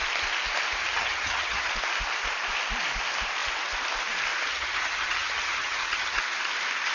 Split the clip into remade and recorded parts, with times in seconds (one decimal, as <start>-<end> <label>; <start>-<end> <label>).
0.0-0.8 recorded; 0.8-1.7 remade; 1.7-4.5 recorded; 4.5-6.2 remade; 6.2-6.9 recorded